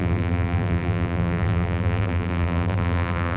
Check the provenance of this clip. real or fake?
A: fake